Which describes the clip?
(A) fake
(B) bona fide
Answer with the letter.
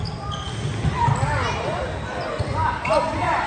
B